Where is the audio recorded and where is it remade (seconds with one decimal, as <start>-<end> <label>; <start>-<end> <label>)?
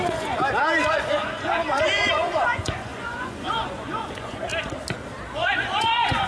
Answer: 0.0-0.4 remade; 0.4-0.9 recorded; 0.9-4.5 remade; 4.5-5.3 recorded; 5.3-6.3 remade